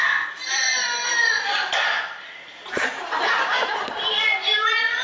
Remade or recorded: remade